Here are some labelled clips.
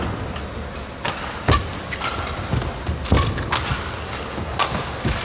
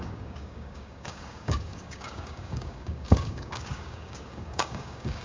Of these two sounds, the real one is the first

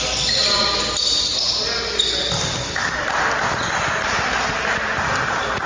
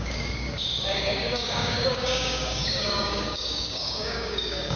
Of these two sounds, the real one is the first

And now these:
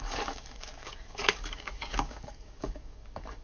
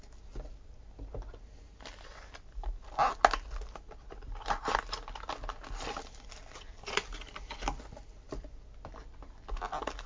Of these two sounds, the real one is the second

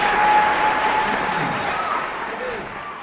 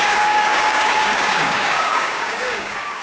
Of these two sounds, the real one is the first